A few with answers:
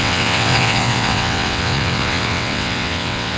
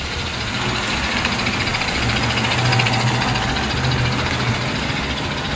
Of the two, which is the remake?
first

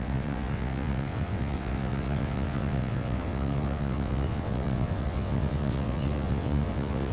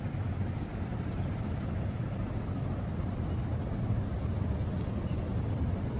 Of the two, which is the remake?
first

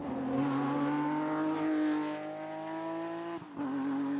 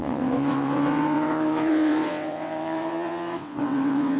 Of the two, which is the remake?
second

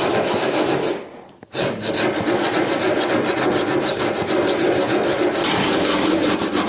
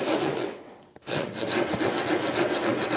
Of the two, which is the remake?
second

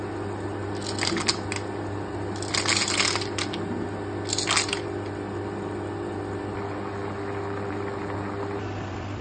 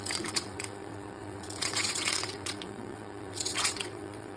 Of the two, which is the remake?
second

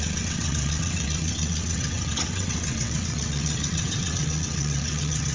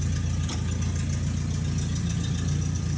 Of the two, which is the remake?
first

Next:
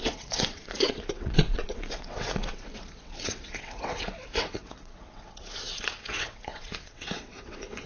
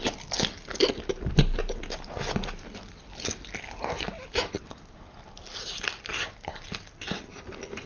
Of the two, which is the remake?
first